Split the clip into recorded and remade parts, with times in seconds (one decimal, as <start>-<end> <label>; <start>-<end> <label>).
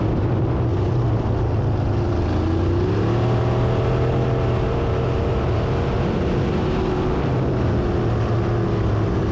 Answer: 0.0-9.3 recorded